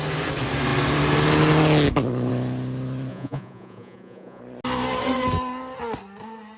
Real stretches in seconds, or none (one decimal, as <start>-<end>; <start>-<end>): 0.0-3.1; 4.4-6.6